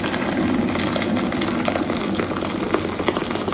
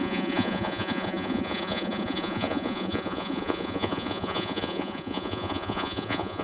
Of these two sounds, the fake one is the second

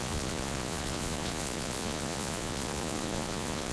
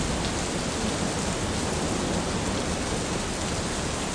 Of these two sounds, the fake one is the first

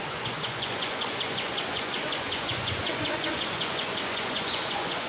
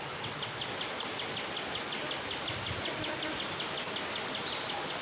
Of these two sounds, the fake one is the first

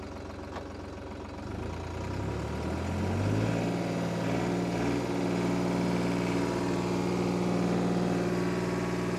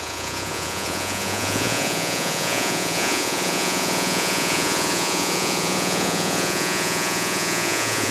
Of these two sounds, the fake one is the second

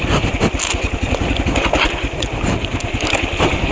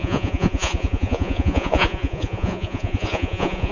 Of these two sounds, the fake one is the second